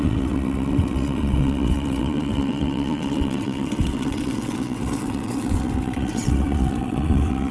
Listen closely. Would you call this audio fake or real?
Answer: fake